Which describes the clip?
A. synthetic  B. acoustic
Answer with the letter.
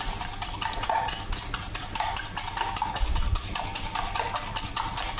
B